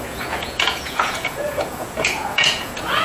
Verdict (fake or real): fake